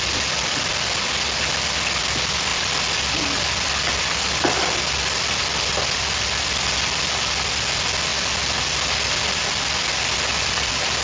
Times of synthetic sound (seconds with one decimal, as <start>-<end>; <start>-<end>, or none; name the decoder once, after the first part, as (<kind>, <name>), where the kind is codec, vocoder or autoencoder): none